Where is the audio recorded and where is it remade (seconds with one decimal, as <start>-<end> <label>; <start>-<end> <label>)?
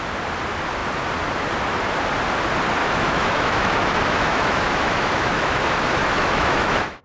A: 0.0-2.8 recorded; 2.8-5.6 remade; 5.6-6.0 recorded; 6.0-7.0 remade